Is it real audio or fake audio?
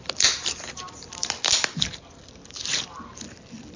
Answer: real